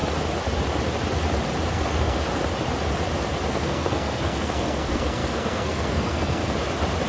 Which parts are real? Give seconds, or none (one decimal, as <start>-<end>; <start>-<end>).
0.0-1.7; 2.3-3.5; 6.4-7.1